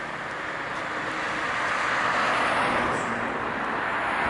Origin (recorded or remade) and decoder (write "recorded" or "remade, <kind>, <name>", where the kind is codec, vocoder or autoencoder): recorded